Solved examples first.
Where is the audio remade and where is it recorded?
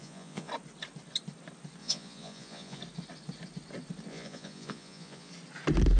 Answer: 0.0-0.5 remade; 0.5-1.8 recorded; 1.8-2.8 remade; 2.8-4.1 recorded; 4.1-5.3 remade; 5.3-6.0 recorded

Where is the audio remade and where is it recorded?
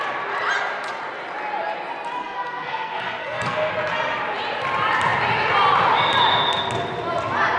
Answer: 0.0-2.2 recorded; 2.2-3.7 remade; 3.7-7.6 recorded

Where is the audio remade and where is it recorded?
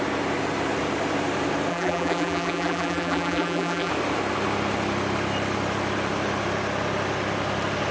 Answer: 0.0-1.7 recorded; 1.7-3.9 remade; 3.9-7.9 recorded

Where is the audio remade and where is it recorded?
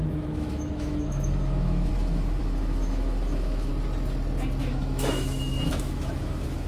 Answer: 0.0-3.7 remade; 3.7-4.6 recorded; 4.6-6.7 remade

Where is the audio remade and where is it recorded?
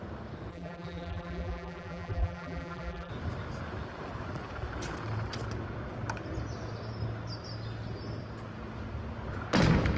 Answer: 0.0-0.5 recorded; 0.5-3.1 remade; 3.1-10.0 recorded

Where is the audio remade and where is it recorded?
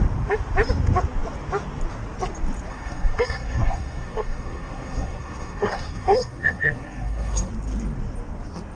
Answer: 0.0-2.7 recorded; 2.7-7.5 remade; 7.5-8.7 recorded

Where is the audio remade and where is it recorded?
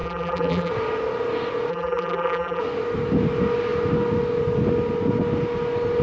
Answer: 0.0-0.7 remade; 0.7-1.7 recorded; 1.7-2.6 remade; 2.6-6.0 recorded